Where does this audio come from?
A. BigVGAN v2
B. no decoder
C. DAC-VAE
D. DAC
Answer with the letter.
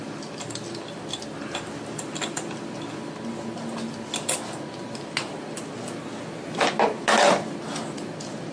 B